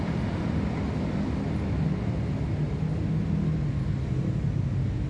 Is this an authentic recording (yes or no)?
yes